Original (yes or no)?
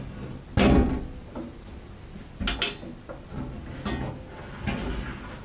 yes